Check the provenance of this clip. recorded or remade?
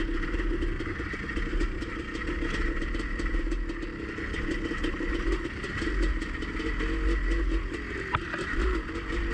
recorded